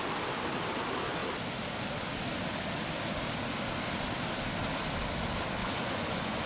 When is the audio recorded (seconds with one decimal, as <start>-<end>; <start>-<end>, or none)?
0.0-5.6